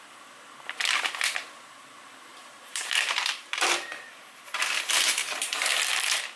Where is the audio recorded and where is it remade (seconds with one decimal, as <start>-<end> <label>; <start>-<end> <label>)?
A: 0.0-2.3 recorded; 2.3-4.0 remade; 4.0-5.2 recorded; 5.2-5.7 remade; 5.7-6.4 recorded